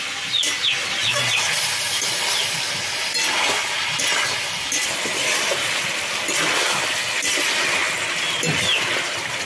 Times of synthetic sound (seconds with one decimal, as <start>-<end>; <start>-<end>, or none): none